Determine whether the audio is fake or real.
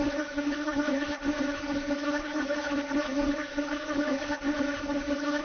fake